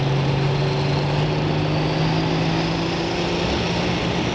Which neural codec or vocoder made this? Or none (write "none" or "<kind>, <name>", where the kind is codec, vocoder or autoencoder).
none